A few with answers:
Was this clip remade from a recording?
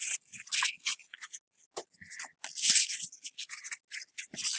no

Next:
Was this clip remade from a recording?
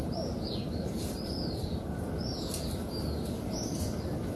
yes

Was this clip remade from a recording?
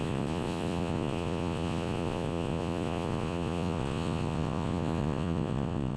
yes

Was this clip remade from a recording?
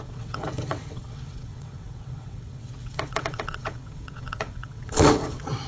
yes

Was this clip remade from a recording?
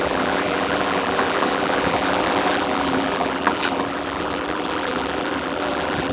yes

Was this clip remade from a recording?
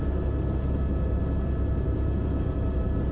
no